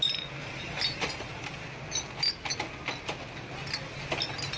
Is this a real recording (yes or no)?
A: yes